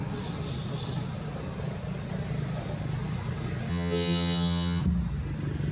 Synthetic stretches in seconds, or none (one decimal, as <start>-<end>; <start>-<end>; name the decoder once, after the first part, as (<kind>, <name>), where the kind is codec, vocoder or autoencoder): 3.7-4.8 (vocoder, HiFi-GAN)